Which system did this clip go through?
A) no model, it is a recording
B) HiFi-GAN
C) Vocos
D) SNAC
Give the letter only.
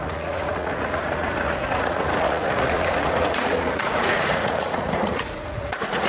C